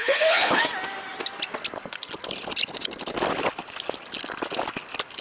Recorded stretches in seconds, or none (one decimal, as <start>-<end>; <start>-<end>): 0.6-5.2